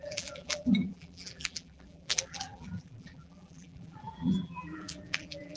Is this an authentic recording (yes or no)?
no